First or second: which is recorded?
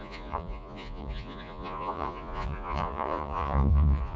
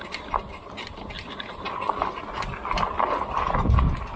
second